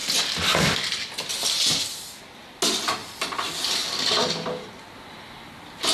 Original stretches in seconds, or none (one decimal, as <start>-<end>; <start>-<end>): 0.0-5.9

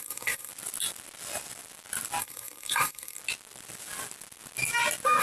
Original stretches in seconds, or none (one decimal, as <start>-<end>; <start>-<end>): 0.5-2.2; 3.2-5.2